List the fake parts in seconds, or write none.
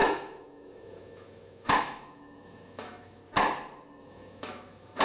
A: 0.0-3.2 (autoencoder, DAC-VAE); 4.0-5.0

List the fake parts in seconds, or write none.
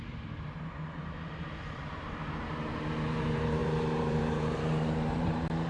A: 0.0-5.7 (vocoder, BigVGAN v2)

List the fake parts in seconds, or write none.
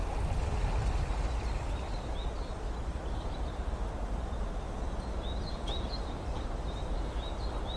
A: none